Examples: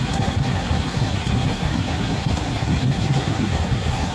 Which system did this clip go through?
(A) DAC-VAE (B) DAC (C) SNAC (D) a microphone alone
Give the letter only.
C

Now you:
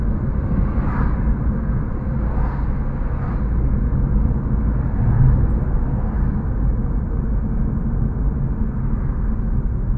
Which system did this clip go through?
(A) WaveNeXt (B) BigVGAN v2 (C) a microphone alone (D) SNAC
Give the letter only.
C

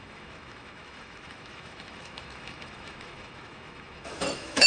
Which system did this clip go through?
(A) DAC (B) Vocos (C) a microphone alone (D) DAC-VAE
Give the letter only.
D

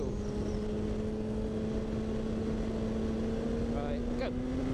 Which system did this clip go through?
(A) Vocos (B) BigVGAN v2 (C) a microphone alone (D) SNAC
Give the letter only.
C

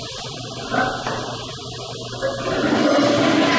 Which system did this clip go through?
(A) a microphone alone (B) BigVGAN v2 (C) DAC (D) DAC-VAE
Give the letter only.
A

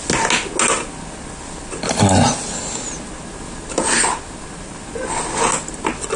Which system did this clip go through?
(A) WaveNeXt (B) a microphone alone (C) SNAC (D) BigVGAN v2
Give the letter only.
B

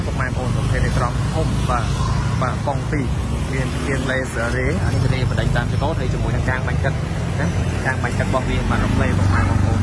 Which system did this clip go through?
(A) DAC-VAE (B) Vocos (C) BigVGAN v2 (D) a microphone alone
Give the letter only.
D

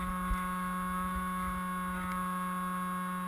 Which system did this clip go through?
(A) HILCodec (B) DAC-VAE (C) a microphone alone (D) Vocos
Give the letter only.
C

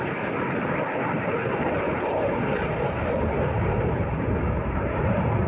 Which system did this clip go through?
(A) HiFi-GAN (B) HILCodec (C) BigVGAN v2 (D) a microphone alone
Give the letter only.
C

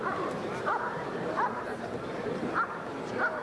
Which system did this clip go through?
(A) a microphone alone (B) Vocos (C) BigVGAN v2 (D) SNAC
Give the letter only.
C